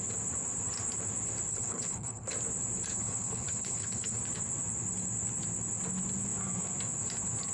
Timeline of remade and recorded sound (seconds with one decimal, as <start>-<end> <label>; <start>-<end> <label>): 0.0-1.5 recorded; 1.5-2.3 remade; 2.3-2.9 recorded; 2.9-4.2 remade; 4.2-7.5 recorded